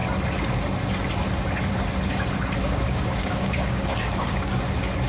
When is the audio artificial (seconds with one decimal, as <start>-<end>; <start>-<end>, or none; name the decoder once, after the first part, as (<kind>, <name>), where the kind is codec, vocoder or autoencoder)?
2.6-4.5 (codec, DAC)